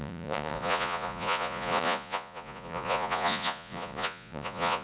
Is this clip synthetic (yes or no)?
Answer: yes